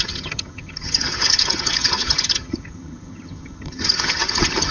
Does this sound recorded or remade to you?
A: remade